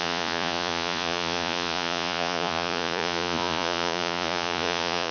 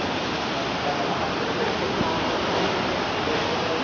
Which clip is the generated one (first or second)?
first